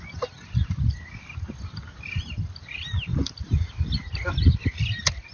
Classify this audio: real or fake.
real